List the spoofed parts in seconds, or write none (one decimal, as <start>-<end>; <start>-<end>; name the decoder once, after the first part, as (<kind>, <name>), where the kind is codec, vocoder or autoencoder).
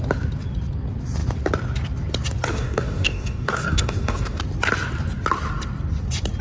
2.5-4.4 (codec, DAC)